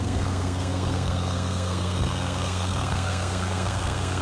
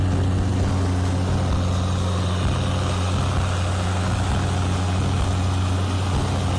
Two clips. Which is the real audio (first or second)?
second